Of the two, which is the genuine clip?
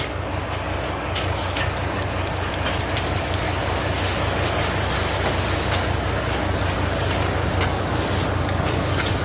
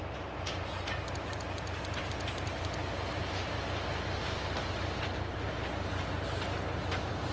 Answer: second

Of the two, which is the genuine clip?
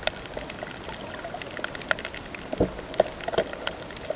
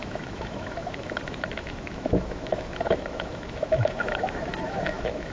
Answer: first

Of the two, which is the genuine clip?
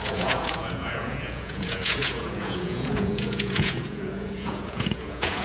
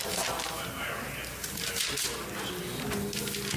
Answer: second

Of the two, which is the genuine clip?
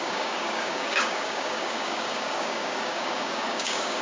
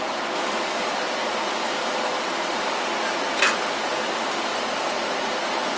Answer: second